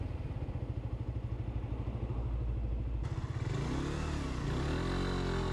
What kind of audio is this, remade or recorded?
recorded